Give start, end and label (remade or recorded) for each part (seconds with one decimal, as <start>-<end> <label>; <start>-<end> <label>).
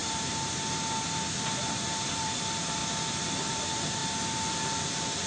0.0-1.6 recorded; 1.6-2.8 remade; 2.8-3.5 recorded; 3.5-4.0 remade; 4.0-5.3 recorded